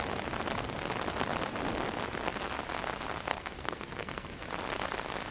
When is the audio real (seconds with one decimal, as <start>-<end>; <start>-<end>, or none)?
0.0-3.3; 4.5-5.3